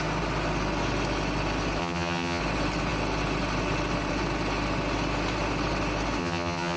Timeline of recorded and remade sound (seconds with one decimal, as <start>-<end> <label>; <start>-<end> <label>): 0.0-1.8 recorded; 1.8-2.4 remade; 2.4-6.2 recorded; 6.2-6.8 remade

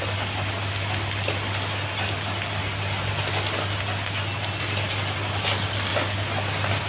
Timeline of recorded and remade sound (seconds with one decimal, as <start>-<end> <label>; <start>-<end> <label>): 0.0-6.9 recorded

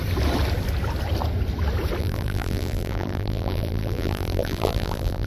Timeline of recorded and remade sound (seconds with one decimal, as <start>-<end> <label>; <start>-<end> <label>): 0.0-2.0 recorded; 2.0-5.3 remade

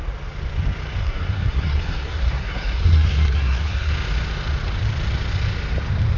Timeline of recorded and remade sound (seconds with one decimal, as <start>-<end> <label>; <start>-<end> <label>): 0.0-1.0 recorded; 1.0-3.9 remade; 3.9-6.2 recorded